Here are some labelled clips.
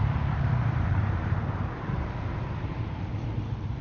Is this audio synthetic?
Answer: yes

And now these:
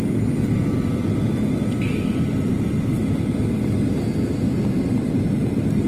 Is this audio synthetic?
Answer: no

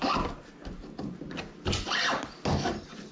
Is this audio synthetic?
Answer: no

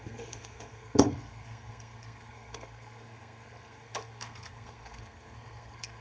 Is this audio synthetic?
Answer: yes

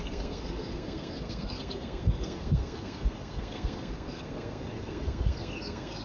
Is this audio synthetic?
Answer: yes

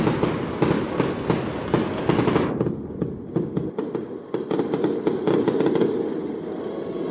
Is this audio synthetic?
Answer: no